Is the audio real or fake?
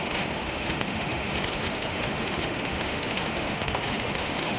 fake